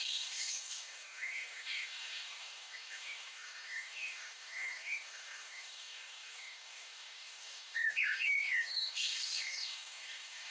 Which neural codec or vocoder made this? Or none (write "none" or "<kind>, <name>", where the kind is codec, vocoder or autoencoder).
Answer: codec, DAC